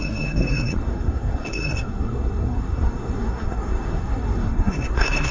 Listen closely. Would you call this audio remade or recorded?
remade